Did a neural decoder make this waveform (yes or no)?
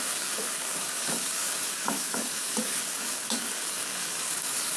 yes